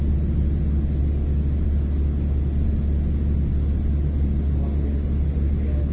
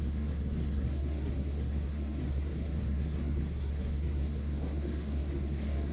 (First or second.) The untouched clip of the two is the first